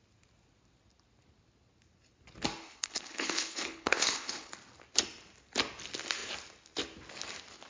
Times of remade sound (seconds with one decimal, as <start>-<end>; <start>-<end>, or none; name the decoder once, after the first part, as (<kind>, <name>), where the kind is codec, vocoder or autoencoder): 2.6-4.5 (codec, HILCodec)